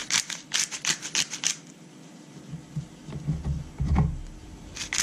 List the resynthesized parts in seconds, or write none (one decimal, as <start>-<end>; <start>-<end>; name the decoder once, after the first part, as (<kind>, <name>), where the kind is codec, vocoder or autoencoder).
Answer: 0.0-3.0 (vocoder, BigVGAN v2)